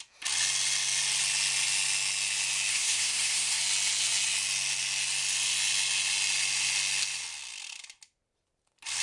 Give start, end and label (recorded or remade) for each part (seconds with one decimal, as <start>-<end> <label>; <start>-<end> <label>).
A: 0.0-2.7 recorded; 2.7-3.6 remade; 3.6-9.0 recorded